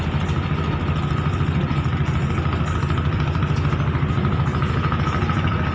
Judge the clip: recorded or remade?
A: recorded